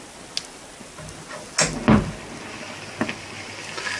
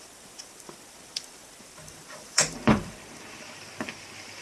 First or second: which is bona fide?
first